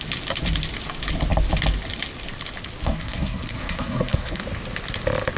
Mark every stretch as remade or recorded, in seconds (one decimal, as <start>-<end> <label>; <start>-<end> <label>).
0.0-2.8 recorded; 2.8-4.4 remade; 4.4-5.4 recorded